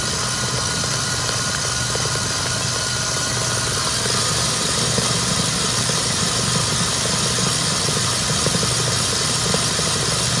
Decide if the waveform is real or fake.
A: real